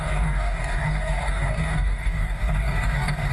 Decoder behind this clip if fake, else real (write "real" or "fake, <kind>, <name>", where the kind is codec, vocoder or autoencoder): fake, codec, DAC